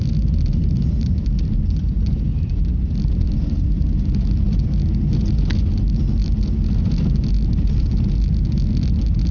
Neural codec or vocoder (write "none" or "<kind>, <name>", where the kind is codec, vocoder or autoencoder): none